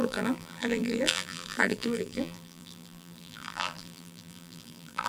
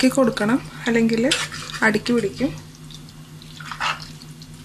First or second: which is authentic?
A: second